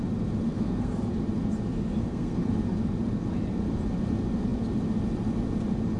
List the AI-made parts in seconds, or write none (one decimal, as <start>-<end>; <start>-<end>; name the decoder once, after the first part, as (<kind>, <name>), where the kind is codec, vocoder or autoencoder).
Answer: 0.5-1.1 (codec, SNAC); 2.0-2.5